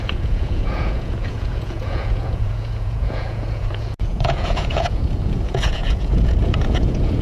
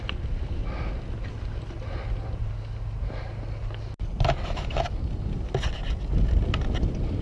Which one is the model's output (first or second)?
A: first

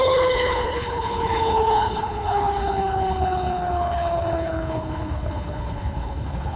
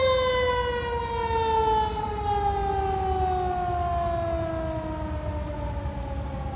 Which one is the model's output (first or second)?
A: first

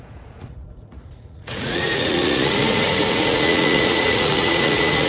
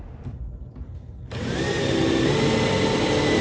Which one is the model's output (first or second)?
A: first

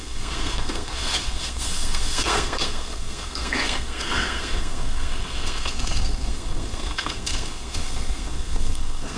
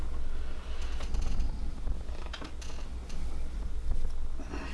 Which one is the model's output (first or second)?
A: first